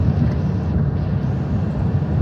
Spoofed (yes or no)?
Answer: no